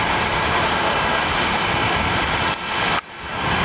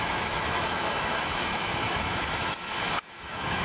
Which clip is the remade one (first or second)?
second